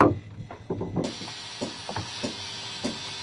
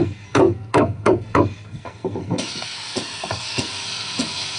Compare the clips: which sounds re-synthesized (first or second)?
second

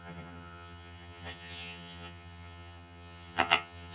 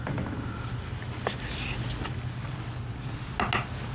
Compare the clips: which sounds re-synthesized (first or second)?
first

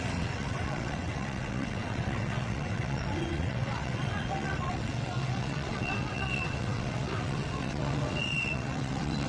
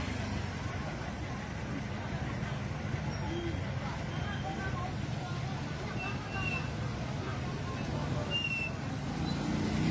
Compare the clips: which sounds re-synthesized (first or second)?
first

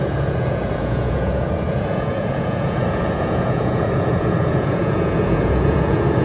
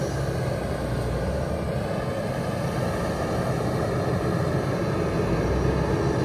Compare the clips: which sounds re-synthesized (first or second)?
first